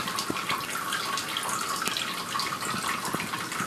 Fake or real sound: real